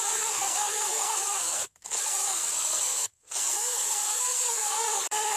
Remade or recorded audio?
remade